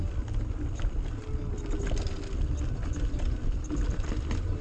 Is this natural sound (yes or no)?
yes